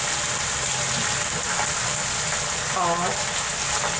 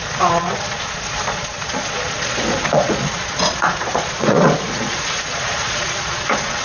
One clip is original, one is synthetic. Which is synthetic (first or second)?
second